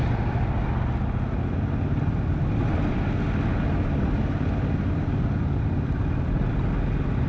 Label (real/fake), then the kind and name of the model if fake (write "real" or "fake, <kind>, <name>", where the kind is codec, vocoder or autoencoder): real